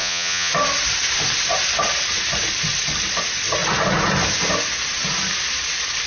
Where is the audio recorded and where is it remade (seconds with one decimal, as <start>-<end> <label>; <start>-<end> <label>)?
0.0-0.5 remade; 0.5-6.1 recorded